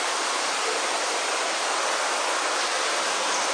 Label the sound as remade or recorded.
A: recorded